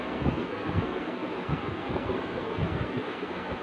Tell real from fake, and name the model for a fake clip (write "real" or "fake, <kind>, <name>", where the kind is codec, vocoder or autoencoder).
fake, codec, SNAC